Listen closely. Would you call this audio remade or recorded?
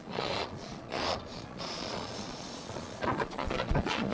remade